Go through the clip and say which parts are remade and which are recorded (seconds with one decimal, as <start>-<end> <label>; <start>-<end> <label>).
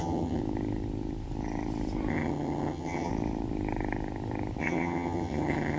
0.0-0.4 remade; 0.4-2.1 recorded; 2.1-3.1 remade; 3.1-4.6 recorded; 4.6-5.8 remade